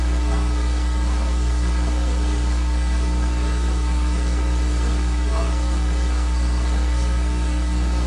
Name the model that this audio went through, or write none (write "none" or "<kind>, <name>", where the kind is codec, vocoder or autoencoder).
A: codec, SNAC